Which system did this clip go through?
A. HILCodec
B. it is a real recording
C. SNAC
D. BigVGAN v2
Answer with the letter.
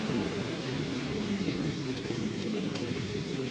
C